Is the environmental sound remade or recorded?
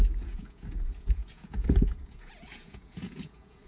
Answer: remade